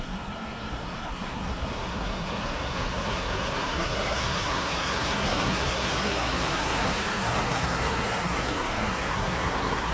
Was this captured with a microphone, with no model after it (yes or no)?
no